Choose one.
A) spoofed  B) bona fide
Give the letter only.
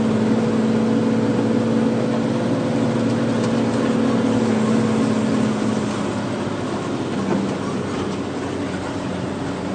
B